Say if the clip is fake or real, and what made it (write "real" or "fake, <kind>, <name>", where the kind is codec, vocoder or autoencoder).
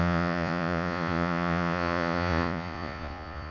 fake, vocoder, Vocos